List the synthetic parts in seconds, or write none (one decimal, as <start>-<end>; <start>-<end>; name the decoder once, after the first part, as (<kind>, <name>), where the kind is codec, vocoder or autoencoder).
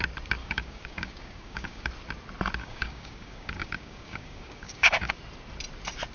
0.4-1.9 (codec, DAC); 2.6-5.1